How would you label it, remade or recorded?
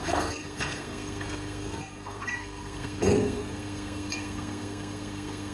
remade